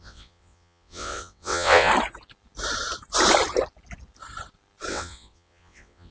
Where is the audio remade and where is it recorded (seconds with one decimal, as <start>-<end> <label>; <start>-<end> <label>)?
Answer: 0.0-1.9 remade; 1.9-4.9 recorded; 4.9-6.1 remade